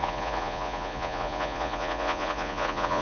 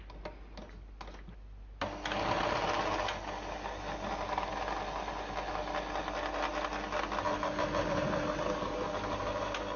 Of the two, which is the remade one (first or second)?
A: first